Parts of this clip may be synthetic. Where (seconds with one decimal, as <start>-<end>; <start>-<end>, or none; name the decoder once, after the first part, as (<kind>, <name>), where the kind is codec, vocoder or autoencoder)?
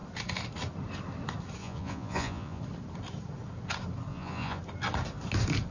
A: 1.6-2.6 (vocoder, Vocos); 4.1-4.6